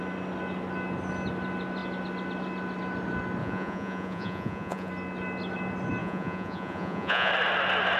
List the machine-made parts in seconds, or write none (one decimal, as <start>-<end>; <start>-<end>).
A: 3.4-4.9; 6.0-7.3